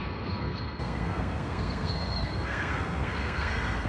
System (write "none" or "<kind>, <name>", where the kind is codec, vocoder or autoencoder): codec, SNAC